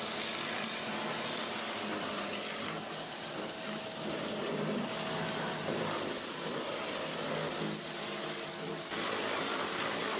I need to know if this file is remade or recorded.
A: recorded